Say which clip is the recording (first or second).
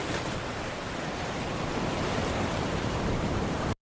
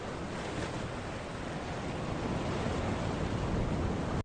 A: second